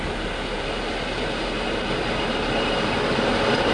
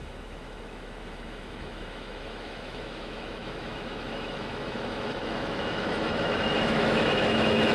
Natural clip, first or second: first